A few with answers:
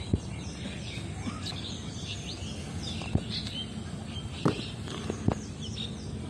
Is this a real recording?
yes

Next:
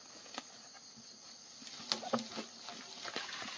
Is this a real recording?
yes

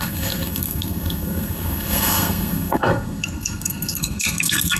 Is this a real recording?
no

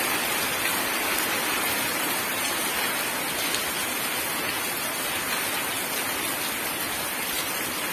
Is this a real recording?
yes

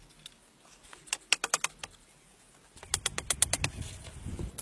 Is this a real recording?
yes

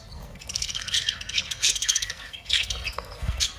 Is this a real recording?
no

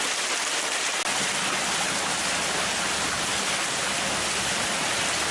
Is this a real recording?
yes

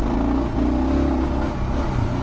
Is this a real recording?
yes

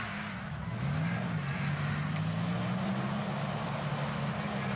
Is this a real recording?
yes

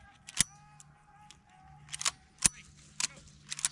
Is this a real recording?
yes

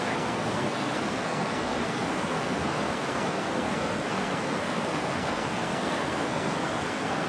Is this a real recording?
no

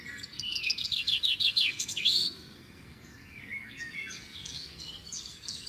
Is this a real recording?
no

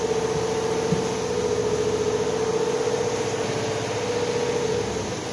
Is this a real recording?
yes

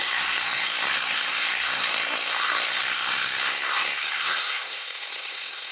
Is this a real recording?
no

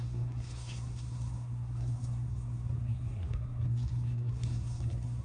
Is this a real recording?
no